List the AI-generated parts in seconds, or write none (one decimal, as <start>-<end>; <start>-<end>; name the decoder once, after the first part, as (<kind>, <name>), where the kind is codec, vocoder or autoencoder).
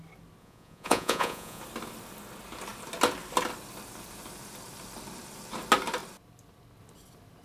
0.4-1.6 (vocoder, Vocos)